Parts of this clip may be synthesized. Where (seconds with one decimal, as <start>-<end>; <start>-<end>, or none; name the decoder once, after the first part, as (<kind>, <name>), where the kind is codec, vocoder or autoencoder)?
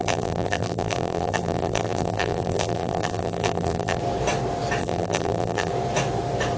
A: 0.0-4.0 (vocoder, BigVGAN v2); 4.8-5.7